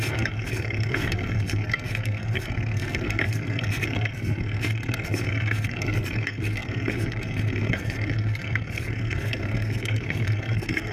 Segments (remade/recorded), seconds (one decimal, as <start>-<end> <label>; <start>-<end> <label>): 0.0-10.9 remade